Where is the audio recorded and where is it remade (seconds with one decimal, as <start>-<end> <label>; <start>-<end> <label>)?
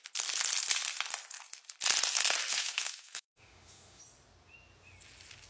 0.0-2.5 recorded; 2.5-4.0 remade; 4.0-5.5 recorded